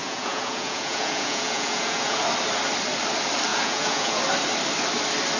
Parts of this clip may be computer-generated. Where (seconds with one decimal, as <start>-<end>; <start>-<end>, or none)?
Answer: 0.0-2.2; 3.5-4.2